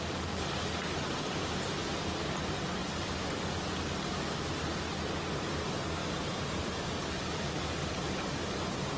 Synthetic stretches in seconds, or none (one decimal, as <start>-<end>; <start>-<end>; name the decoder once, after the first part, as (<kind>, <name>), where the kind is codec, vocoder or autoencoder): 6.0-6.9 (vocoder, BigVGAN v2); 7.8-8.3